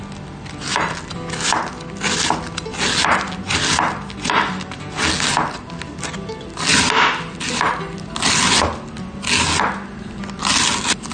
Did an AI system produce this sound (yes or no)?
no